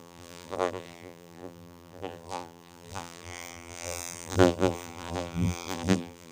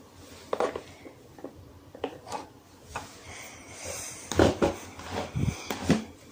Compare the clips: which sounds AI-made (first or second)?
first